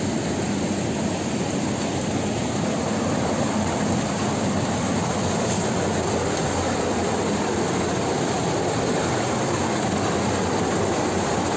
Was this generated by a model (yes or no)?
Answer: no